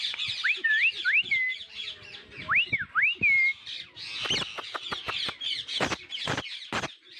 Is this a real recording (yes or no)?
yes